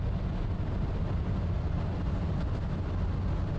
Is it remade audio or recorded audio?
recorded